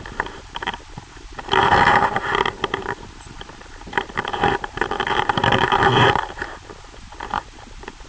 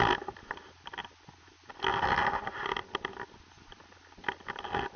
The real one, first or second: second